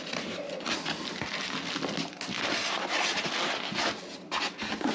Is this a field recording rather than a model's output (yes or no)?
yes